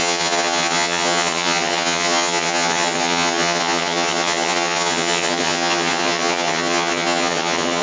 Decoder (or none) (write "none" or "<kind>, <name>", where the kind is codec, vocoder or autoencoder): vocoder, HiFi-GAN